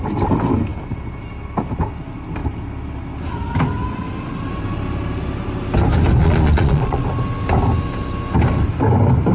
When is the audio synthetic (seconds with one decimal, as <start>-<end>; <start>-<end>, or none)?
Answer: 6.2-7.0